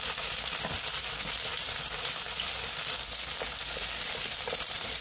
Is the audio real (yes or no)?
yes